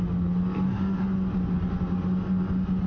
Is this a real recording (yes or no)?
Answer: yes